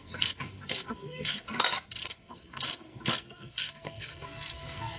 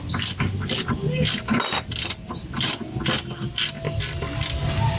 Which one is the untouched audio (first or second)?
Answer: second